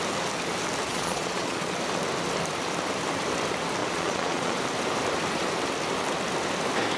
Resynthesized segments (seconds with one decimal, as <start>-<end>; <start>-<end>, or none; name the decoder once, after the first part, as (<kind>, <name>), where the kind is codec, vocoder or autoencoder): 0.9-1.7 (vocoder, Vocos); 3.8-4.6